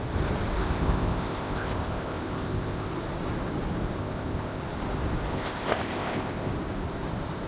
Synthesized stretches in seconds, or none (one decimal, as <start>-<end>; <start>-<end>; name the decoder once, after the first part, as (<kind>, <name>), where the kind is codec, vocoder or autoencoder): 0.6-2.9 (codec, ZipCodec); 4.0-4.6; 5.3-6.5